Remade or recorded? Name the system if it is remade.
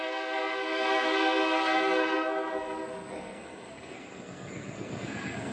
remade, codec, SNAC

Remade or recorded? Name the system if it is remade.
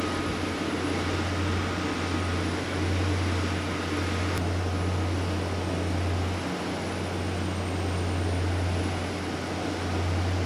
recorded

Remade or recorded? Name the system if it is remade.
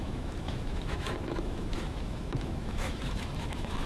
remade, autoencoder, DAC-VAE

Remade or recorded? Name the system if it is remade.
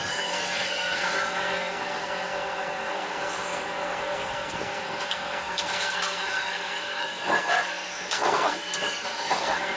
remade, codec, SNAC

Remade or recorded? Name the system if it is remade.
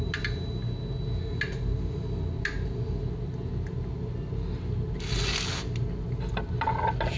recorded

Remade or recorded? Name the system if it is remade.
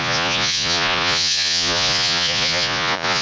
remade, vocoder, Vocos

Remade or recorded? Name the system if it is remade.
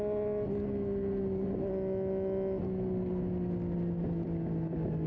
recorded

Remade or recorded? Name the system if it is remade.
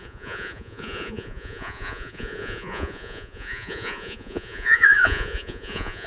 remade, vocoder, Vocos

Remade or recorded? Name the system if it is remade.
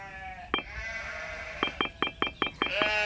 recorded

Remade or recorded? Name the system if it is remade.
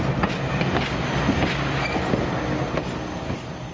recorded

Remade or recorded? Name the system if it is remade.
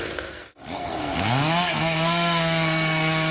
remade, codec, SNAC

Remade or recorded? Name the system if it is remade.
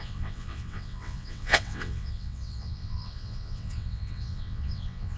remade, vocoder, WaveNeXt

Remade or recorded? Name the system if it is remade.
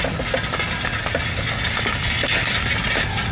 recorded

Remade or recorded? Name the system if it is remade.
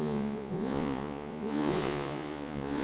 remade, vocoder, Vocos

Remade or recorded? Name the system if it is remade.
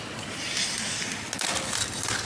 recorded